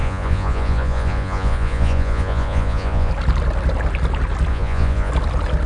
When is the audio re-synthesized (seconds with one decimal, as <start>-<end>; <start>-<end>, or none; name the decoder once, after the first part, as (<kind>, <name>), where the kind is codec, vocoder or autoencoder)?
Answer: 0.0-3.1 (vocoder, Vocos); 4.5-5.1